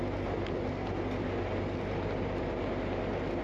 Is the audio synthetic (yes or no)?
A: no